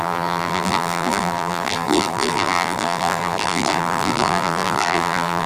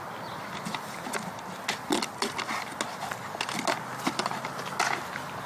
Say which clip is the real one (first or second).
second